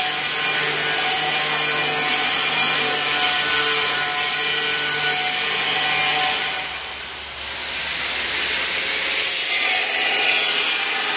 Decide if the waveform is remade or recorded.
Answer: recorded